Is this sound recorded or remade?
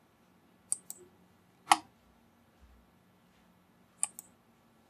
recorded